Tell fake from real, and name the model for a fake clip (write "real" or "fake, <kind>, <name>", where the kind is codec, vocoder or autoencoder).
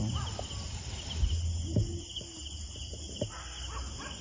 real